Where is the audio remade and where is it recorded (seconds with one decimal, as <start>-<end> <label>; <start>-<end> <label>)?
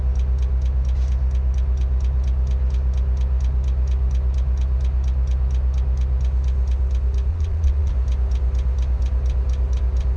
0.0-7.3 recorded; 7.3-7.9 remade; 7.9-10.2 recorded